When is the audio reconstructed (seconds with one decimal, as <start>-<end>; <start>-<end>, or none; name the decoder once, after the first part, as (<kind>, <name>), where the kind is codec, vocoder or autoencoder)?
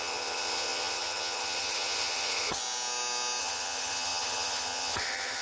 0.0-2.6 (vocoder, HiFi-GAN); 3.4-5.4